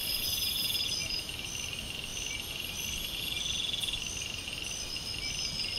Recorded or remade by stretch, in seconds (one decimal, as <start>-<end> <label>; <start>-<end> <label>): 0.0-1.3 remade; 1.3-5.8 recorded